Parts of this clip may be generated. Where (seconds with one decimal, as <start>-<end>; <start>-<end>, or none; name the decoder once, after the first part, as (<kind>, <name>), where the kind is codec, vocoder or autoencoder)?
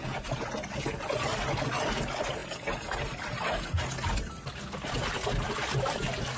5.7-6.4 (vocoder, BigVGAN v2)